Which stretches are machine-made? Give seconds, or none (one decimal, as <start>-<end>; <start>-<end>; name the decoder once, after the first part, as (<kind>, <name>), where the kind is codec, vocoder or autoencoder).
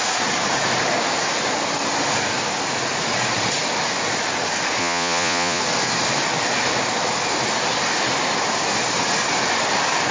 4.8-5.6 (vocoder, Vocos)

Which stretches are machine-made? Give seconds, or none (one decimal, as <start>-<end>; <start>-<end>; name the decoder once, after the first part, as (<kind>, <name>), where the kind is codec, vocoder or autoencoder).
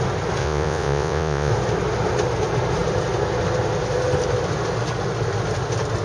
0.4-1.5 (vocoder, Vocos)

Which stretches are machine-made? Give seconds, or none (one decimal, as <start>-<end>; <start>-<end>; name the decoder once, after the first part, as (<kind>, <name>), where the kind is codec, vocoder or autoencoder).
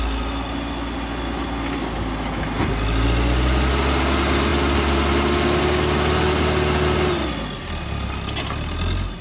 none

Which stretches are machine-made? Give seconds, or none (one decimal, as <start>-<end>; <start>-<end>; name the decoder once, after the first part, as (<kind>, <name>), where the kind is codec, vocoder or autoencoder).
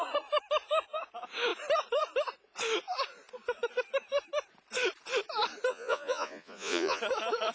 5.7-7.0 (vocoder, Vocos)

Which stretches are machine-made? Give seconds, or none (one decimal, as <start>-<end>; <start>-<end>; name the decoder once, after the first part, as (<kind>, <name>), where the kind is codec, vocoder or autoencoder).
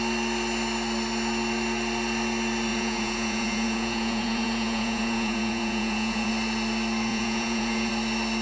2.7-6.3 (vocoder, Vocos); 7.1-7.9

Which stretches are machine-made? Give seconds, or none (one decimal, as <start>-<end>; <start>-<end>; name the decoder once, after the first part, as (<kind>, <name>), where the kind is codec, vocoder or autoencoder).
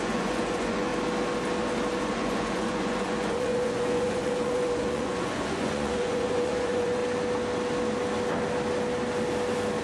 0.0-0.9 (vocoder, Vocos); 2.0-7.0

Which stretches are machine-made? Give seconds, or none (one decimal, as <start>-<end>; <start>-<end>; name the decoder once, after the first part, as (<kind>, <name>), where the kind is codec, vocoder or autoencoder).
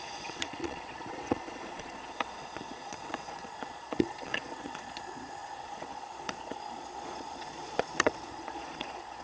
0.0-9.2 (vocoder, Vocos)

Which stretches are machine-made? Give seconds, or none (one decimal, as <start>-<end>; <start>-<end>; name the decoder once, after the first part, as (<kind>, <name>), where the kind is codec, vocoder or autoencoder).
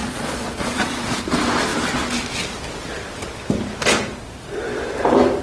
0.0-1.2 (vocoder, Vocos)